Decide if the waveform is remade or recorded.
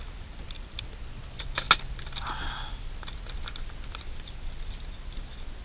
recorded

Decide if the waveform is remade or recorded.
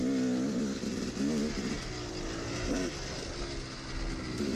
recorded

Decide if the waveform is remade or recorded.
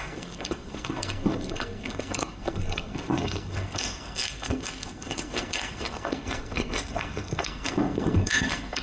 remade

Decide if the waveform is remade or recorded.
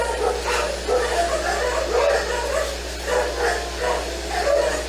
recorded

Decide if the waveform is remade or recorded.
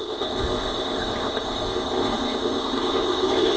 remade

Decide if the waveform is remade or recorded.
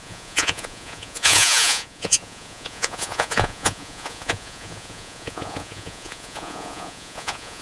remade